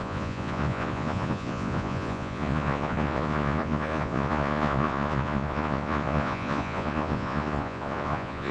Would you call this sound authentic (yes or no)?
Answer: no